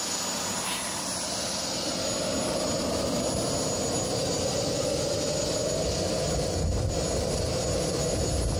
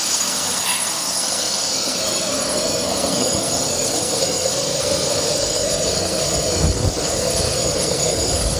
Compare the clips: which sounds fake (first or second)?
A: second